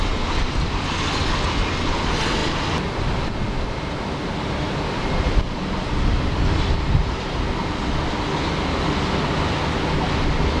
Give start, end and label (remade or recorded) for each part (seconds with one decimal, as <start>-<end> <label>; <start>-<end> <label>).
0.0-10.6 recorded